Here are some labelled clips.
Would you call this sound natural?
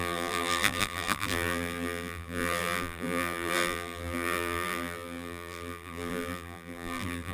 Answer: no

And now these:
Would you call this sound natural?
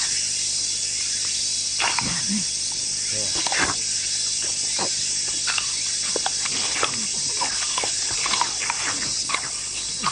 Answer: yes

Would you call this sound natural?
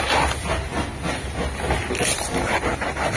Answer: yes